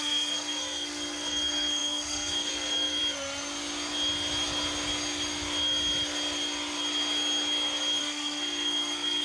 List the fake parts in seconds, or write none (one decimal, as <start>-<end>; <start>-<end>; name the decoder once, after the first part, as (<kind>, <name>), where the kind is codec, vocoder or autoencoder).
0.0-3.0 (codec, SNAC); 8.0-9.2